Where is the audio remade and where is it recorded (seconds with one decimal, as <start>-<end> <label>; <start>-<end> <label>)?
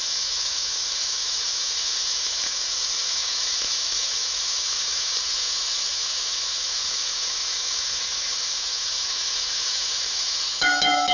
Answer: 0.0-11.1 remade